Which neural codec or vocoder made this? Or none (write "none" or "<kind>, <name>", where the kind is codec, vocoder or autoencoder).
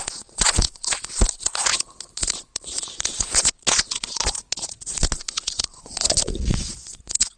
vocoder, Vocos